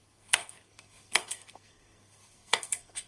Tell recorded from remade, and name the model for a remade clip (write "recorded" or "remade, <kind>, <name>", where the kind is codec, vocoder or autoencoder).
remade, codec, SNAC